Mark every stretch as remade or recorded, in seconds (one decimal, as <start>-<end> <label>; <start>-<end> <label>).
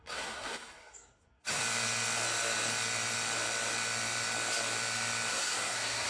0.0-1.6 remade; 1.6-5.3 recorded; 5.3-6.1 remade